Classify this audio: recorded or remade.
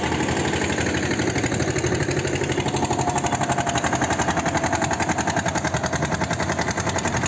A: recorded